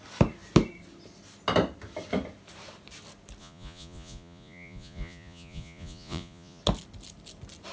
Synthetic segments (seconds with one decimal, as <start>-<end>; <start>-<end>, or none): 3.4-6.6